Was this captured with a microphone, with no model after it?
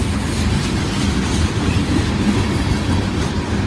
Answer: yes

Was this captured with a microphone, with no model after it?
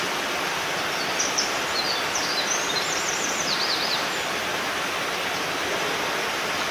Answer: yes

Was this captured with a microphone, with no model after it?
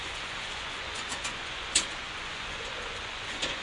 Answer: no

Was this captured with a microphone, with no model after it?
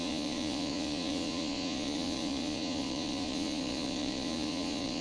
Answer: no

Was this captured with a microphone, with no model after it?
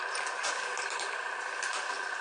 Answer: yes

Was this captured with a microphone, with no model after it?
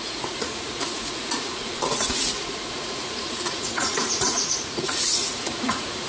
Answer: no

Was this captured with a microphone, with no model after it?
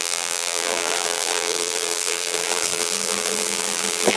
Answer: no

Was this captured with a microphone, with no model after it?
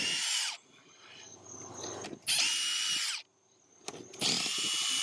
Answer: yes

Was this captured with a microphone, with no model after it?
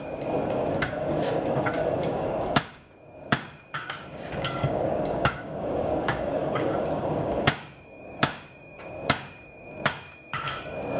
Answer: no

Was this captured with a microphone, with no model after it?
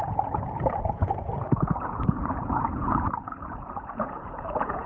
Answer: no